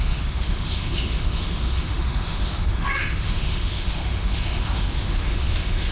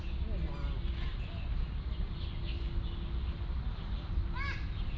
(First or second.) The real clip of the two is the second